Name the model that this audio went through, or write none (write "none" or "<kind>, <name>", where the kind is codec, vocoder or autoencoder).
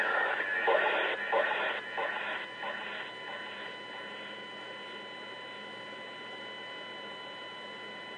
none